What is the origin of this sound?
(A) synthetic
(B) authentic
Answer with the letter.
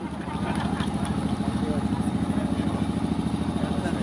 B